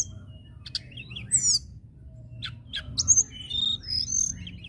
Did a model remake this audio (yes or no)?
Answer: no